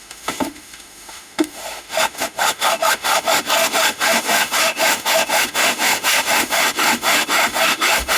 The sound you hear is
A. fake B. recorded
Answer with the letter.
A